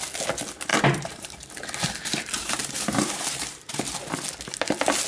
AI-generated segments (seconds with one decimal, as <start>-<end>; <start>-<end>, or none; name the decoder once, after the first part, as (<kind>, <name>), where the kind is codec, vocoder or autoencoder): 0.7-3.8 (vocoder, BigVGAN v2)